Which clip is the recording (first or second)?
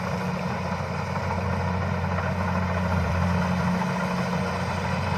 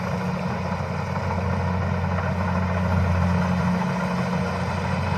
second